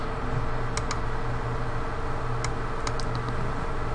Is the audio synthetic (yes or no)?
no